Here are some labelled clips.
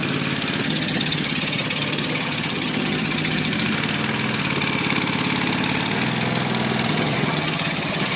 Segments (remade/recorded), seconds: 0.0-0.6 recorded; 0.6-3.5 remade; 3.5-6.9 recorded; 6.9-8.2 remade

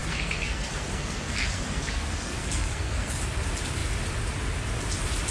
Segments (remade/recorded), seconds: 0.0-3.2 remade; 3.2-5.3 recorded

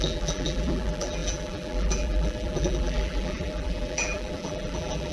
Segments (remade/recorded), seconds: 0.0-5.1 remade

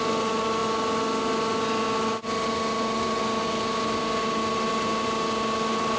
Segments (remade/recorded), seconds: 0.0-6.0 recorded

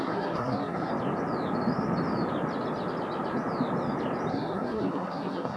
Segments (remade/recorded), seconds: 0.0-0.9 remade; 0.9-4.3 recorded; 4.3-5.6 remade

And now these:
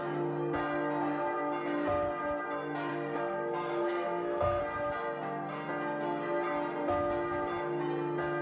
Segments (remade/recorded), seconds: 0.0-2.9 recorded; 2.9-4.6 remade; 4.6-8.4 recorded